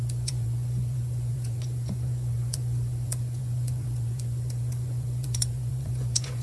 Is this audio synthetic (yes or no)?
yes